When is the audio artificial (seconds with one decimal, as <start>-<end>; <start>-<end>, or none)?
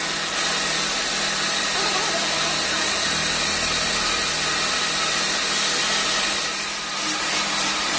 none